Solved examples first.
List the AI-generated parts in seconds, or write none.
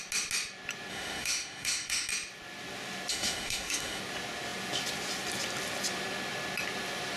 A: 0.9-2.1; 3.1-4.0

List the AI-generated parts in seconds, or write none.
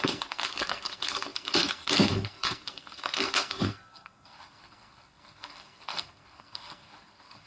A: 0.0-7.5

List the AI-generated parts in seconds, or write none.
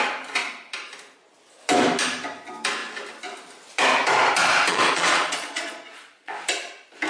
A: 4.7-6.3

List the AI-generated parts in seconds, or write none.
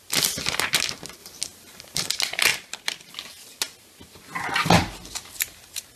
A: 1.2-2.1; 2.5-3.1